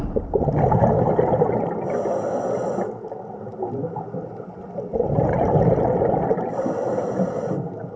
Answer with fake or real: real